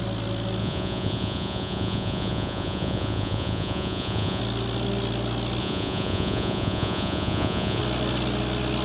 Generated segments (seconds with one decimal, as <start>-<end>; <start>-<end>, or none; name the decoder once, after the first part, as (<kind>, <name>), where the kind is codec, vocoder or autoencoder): 0.6-4.4 (vocoder, Vocos); 5.6-7.8

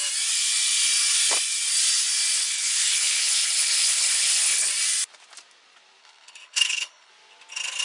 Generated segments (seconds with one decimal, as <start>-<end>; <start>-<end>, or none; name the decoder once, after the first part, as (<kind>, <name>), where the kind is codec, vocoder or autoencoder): 2.4-4.7 (codec, HILCodec); 6.0-7.1